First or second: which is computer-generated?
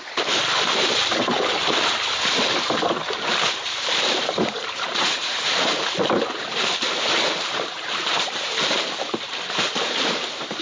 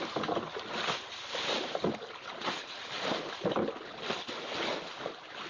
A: first